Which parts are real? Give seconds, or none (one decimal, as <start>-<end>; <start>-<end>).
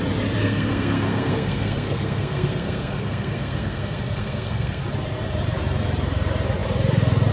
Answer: 0.0-0.4; 4.8-7.3